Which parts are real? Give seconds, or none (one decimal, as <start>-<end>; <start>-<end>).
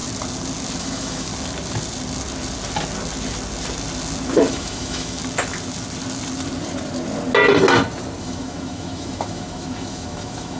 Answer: 0.0-0.8; 1.3-4.5; 5.2-8.2